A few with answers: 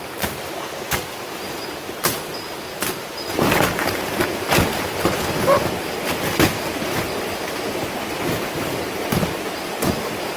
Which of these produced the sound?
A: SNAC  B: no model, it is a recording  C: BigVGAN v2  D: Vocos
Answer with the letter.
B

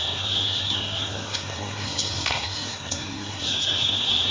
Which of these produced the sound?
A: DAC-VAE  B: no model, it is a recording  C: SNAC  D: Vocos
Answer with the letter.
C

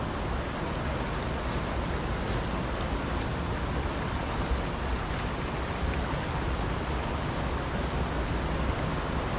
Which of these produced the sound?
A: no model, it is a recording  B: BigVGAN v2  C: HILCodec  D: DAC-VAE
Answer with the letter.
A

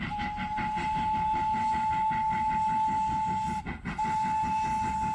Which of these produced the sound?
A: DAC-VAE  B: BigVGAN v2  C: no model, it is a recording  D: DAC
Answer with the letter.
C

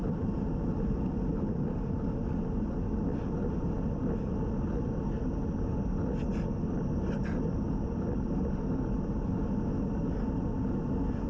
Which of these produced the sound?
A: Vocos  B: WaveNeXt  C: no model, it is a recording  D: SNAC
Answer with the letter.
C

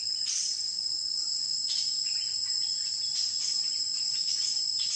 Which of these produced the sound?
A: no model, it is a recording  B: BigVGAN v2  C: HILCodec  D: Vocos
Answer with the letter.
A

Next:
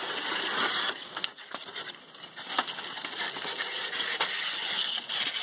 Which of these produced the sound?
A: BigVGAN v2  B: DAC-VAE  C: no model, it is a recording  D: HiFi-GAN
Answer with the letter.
C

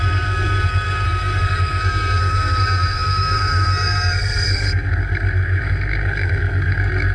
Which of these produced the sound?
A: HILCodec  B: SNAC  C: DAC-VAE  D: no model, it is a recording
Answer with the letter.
B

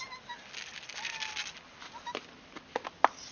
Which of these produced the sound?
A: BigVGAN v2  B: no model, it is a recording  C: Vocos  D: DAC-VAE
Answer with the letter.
B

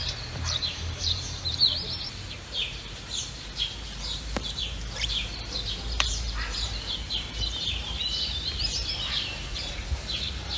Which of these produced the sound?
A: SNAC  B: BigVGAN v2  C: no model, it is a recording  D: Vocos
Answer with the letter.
B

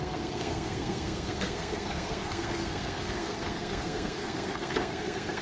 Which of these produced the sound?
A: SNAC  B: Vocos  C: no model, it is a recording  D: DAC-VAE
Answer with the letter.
A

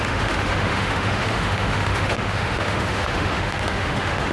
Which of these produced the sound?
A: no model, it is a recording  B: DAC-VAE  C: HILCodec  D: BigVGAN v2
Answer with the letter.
B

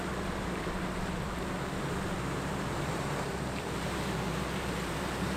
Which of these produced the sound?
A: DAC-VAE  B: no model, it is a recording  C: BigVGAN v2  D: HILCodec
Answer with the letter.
C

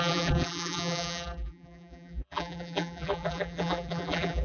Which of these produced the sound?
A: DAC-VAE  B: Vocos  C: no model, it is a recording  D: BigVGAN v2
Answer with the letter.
D